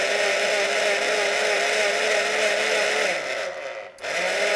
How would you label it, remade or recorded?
recorded